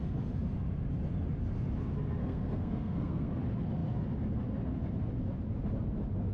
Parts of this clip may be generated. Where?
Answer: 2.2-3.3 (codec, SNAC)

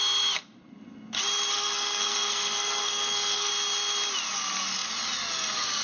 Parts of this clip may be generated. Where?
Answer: 1.5-3.5 (codec, SNAC)